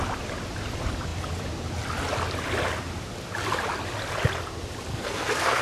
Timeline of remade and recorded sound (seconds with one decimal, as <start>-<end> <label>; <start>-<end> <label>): 0.0-4.9 recorded; 4.9-5.6 remade